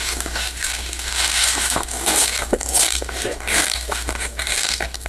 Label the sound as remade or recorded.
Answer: remade